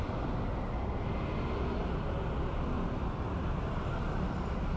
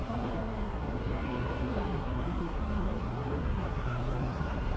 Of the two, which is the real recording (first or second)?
first